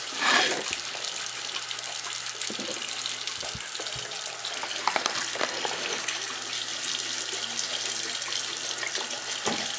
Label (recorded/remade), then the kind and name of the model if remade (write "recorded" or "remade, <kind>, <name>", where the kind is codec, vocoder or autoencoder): recorded